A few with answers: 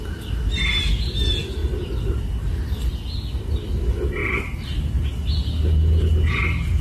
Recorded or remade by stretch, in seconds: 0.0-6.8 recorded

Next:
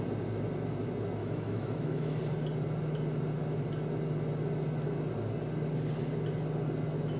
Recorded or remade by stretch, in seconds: 0.0-1.2 recorded; 1.2-2.2 remade; 2.2-7.2 recorded

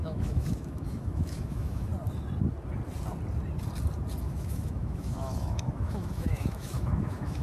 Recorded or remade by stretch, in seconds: 0.0-1.9 remade; 1.9-4.2 recorded; 4.2-7.4 remade

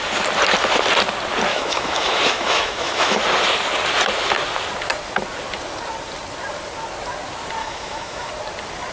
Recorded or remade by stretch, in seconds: 0.0-1.5 recorded; 1.5-3.2 remade; 3.2-7.6 recorded; 7.6-8.3 remade; 8.3-8.9 recorded

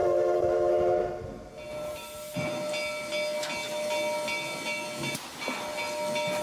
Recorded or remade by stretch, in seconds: 0.0-0.7 remade; 0.7-6.4 recorded